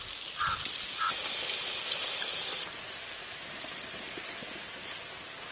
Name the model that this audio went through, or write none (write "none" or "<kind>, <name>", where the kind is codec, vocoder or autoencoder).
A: none